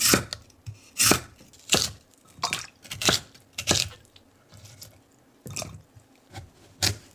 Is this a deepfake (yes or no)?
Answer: no